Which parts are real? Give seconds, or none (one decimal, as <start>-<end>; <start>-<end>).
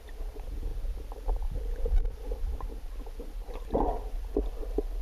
0.0-5.0